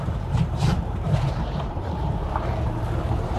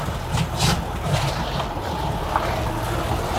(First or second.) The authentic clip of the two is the second